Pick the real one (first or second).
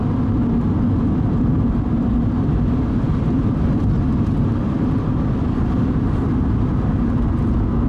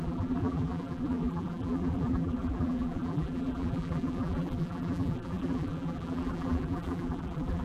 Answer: first